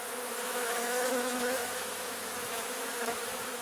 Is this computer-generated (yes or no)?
yes